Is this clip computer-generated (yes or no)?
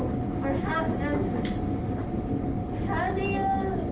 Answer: no